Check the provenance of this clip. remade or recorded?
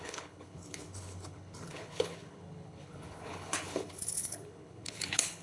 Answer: remade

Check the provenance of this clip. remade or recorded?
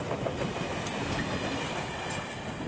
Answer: recorded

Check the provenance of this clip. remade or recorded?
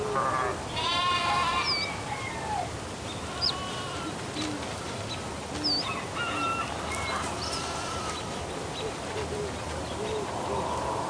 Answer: recorded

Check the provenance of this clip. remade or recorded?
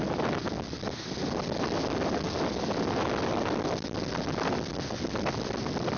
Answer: recorded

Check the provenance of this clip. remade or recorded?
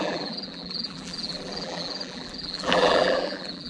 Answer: remade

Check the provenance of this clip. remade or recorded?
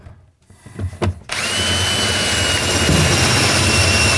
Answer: recorded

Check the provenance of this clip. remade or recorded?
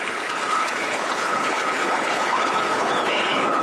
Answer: remade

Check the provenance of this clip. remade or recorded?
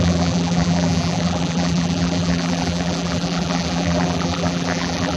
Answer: remade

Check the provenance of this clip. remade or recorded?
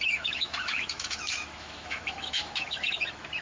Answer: remade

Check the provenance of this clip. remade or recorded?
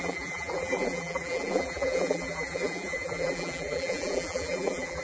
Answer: remade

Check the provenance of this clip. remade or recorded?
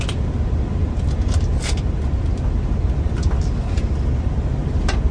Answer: recorded